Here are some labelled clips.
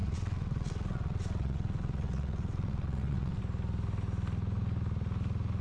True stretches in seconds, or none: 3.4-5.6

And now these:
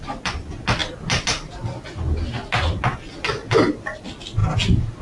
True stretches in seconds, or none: 0.0-5.0

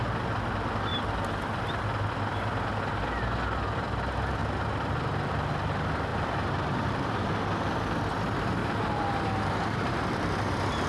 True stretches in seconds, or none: 0.0-4.4; 5.0-6.1; 7.4-8.6; 9.9-10.9